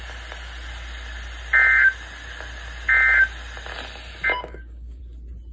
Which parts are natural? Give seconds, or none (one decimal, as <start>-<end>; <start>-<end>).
0.0-4.3; 5.0-5.5